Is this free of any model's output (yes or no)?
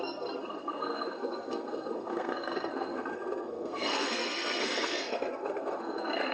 no